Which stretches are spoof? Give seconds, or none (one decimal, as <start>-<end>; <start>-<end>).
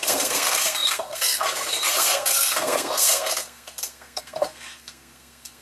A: 0.0-5.6